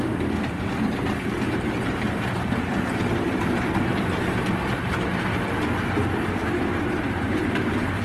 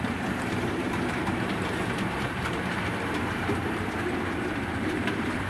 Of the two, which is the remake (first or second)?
second